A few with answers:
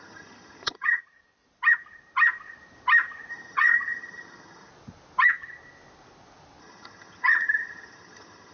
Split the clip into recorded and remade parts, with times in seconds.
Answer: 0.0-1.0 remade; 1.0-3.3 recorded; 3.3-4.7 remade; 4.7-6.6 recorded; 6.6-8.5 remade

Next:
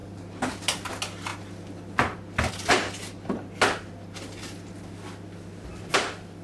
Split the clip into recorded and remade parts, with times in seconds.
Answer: 0.0-6.4 recorded